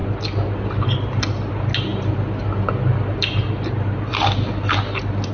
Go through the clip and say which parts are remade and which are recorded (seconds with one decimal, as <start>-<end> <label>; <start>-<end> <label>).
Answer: 0.0-5.3 recorded